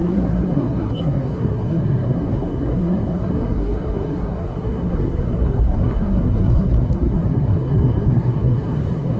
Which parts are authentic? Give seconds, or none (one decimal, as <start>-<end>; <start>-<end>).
none